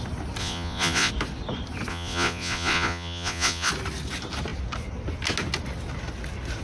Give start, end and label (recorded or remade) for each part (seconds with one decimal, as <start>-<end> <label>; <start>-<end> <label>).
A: 0.0-0.4 recorded; 0.4-1.1 remade; 1.1-1.9 recorded; 1.9-3.7 remade; 3.7-6.6 recorded